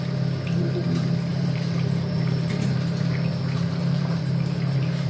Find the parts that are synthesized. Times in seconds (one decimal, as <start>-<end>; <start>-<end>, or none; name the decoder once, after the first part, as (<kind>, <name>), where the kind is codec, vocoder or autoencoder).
1.3-3.3 (vocoder, BigVGAN v2); 3.8-5.1